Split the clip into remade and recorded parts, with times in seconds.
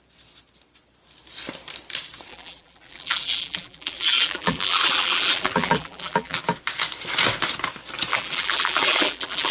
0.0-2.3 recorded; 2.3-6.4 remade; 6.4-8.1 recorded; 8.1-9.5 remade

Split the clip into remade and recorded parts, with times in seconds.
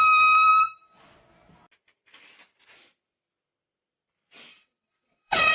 0.0-4.5 recorded; 4.5-5.5 remade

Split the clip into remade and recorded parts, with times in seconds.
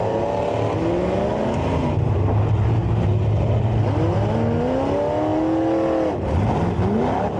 0.0-7.4 recorded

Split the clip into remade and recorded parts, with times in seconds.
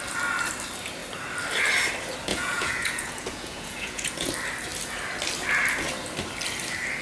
0.0-2.3 recorded; 2.3-4.3 remade; 4.3-7.0 recorded